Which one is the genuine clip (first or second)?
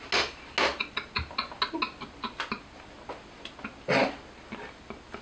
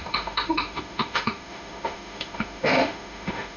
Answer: first